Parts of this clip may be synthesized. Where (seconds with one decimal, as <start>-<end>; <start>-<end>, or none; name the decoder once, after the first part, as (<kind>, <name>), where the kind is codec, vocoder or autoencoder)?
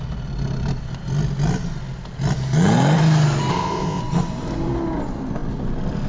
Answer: 3.5-4.0 (codec, ZipCodec)